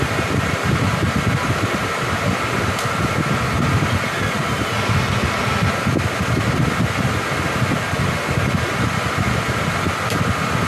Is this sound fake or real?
real